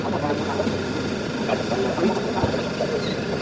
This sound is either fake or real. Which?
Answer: real